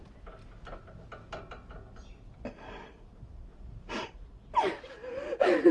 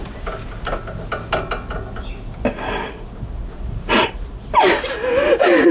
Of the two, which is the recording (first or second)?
second